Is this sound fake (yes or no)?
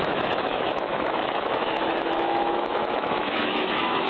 yes